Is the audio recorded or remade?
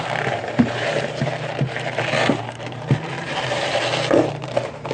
remade